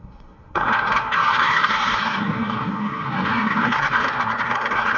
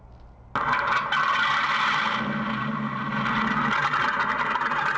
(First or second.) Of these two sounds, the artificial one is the first